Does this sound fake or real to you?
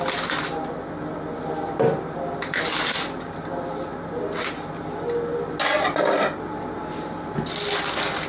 real